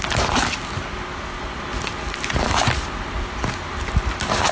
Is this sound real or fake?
real